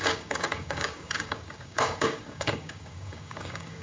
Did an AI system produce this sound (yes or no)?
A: yes